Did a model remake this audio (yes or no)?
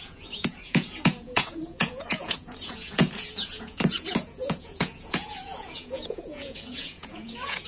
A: yes